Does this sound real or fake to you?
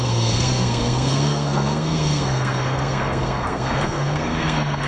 fake